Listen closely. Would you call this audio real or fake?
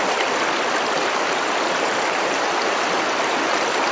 real